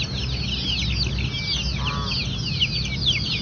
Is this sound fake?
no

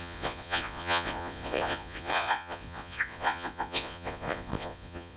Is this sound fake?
yes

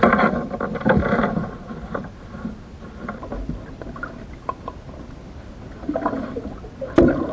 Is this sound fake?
no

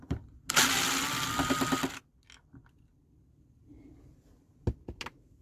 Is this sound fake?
no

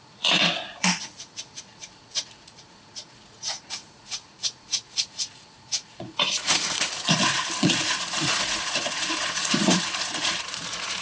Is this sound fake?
yes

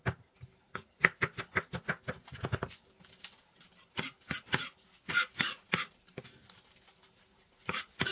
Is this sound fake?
no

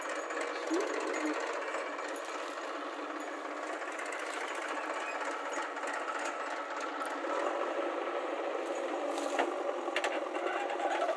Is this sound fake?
no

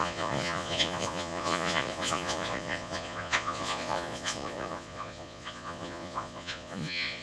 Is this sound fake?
yes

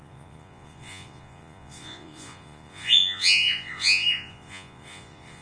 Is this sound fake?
yes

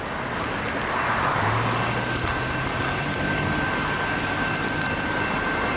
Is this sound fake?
no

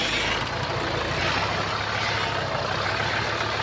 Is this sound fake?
no